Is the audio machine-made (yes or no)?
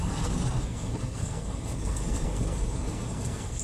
yes